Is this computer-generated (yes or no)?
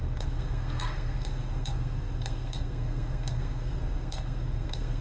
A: yes